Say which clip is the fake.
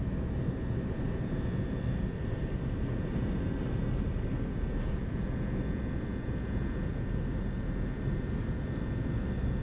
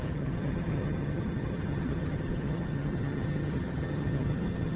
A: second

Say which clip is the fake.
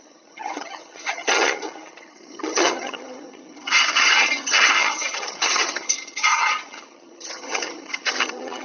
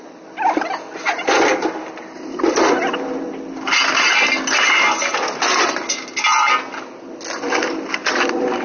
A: first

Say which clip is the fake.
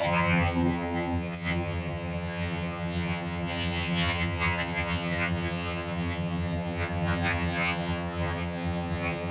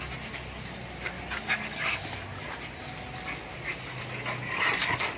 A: first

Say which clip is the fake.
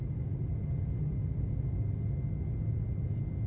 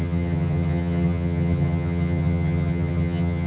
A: second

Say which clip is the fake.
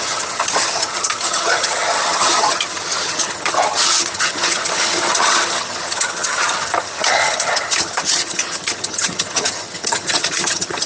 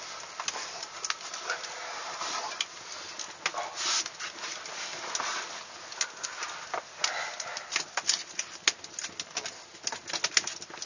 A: first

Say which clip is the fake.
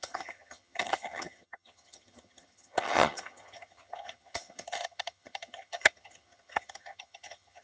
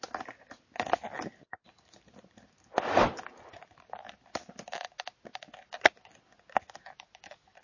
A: first